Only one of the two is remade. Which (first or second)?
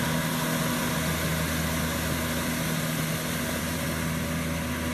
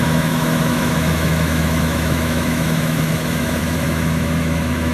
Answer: second